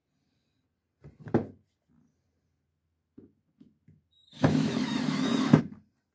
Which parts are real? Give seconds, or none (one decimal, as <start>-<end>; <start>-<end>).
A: 0.0-2.7; 5.6-6.1